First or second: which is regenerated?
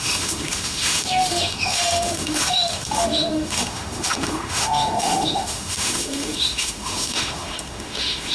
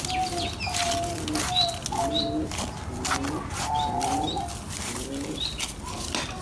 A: first